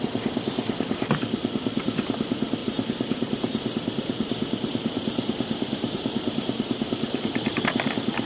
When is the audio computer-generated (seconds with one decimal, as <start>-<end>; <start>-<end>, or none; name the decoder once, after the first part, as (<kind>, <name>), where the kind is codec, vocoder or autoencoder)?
2.6-7.6 (vocoder, BigVGAN v2)